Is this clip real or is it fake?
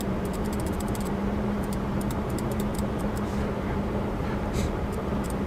fake